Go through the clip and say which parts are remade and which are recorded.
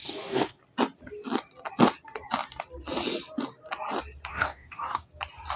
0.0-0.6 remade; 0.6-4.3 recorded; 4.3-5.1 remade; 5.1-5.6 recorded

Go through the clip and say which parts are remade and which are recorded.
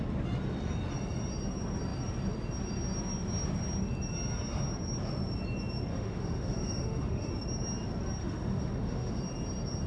0.0-5.9 recorded; 5.9-7.3 remade; 7.3-8.2 recorded; 8.2-9.2 remade; 9.2-9.9 recorded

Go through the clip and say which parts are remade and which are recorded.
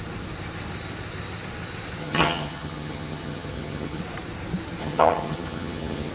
0.0-2.0 recorded; 2.0-4.0 remade; 4.0-4.8 recorded; 4.8-6.1 remade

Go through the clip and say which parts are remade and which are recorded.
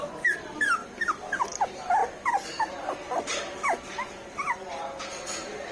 0.0-2.0 recorded; 2.0-5.0 remade; 5.0-5.7 recorded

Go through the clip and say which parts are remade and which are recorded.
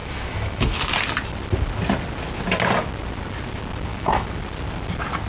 0.0-0.9 remade; 0.9-3.9 recorded; 3.9-4.4 remade; 4.4-5.3 recorded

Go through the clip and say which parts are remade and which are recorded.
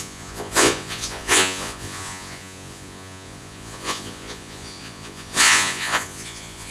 0.0-6.7 remade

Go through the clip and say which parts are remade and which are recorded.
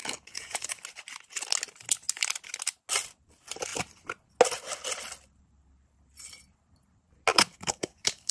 0.0-0.8 remade; 0.8-7.3 recorded; 7.3-8.3 remade